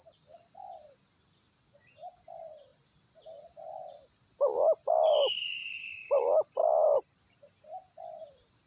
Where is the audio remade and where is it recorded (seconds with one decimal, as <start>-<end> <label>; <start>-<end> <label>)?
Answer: 0.0-8.7 recorded